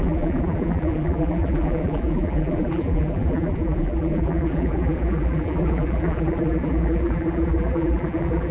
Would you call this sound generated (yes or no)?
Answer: yes